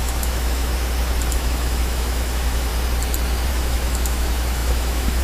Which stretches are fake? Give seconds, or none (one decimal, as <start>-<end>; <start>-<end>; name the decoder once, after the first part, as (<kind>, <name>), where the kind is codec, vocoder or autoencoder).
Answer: 0.0-0.7 (autoencoder, DAC-VAE); 1.3-2.7; 3.5-5.2